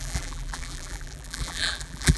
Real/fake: fake